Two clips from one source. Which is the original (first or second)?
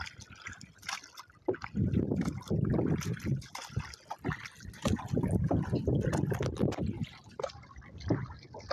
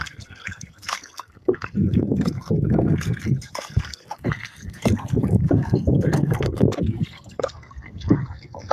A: first